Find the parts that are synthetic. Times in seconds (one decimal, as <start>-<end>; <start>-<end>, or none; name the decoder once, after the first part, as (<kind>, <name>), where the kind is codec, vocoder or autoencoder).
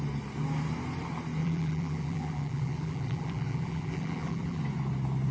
1.4-4.6 (vocoder, BigVGAN v2)